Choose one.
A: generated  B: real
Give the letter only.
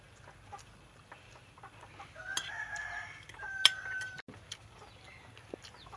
B